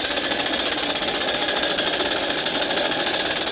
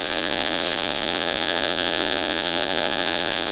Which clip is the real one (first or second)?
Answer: first